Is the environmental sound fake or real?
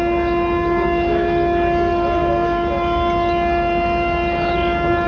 real